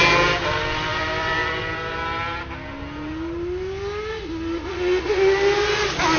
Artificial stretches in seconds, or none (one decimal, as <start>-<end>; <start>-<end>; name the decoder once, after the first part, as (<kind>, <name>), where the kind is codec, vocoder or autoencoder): 0.9-1.6 (vocoder, BigVGAN v2)